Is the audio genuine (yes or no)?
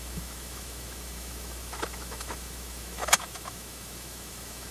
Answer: no